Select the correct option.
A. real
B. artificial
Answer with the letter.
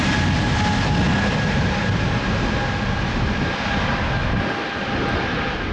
A